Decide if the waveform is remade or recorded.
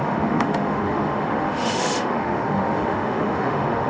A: remade